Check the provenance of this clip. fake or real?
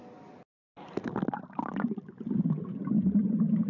real